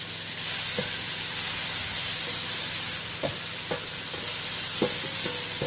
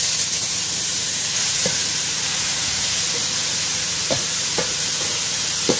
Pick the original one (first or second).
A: first